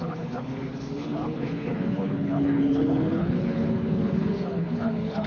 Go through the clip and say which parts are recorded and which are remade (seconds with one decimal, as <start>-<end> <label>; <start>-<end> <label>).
0.0-5.3 remade